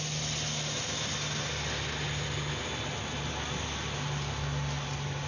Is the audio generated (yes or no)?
no